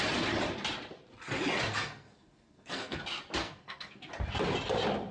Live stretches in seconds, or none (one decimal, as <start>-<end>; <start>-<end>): 0.0-1.7; 3.0-3.4; 4.1-5.1